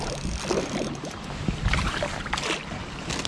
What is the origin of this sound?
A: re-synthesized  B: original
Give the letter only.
B